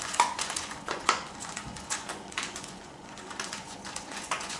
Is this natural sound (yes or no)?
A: no